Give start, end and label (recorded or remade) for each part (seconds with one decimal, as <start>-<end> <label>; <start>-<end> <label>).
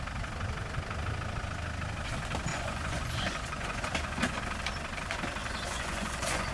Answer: 0.0-2.5 recorded; 2.5-4.4 remade; 4.4-5.4 recorded; 5.4-6.5 remade